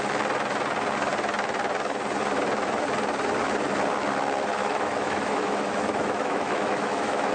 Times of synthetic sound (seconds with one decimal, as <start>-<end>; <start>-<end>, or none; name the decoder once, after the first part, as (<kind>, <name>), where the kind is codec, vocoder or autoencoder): 4.6-7.3 (autoencoder, DAC-VAE)